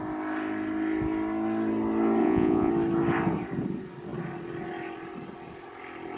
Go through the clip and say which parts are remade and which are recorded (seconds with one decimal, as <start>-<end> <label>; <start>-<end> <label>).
0.0-2.2 recorded; 2.2-2.7 remade; 2.7-6.2 recorded